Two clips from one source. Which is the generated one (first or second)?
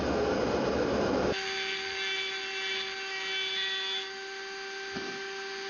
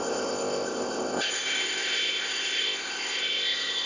second